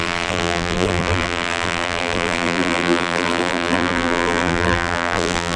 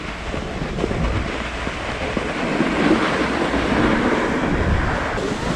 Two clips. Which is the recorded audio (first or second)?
second